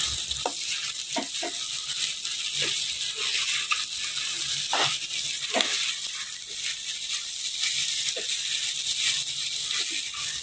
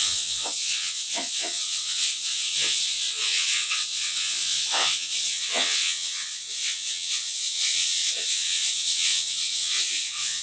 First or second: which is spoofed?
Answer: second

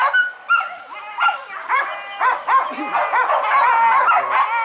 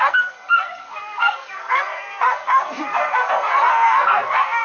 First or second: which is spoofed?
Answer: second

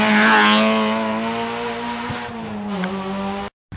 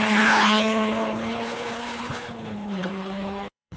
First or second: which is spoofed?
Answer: second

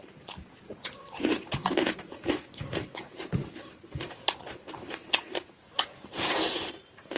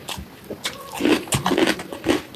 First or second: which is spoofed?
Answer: first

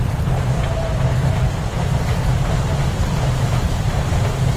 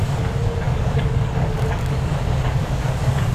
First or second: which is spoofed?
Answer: second